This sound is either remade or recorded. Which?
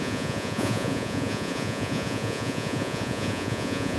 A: remade